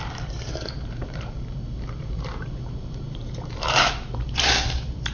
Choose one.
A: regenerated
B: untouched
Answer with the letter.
A